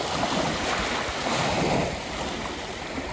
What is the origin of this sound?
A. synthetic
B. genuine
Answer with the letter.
B